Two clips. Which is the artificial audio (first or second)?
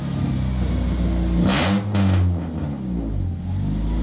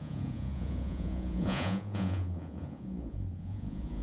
second